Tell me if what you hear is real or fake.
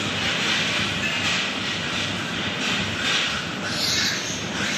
real